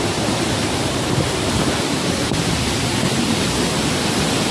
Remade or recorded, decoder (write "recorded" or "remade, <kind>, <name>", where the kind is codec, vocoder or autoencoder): recorded